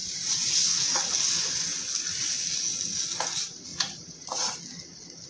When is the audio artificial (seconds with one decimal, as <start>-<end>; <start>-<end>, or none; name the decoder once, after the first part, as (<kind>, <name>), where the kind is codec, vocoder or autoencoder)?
0.0-0.6 (vocoder, Vocos); 3.7-4.3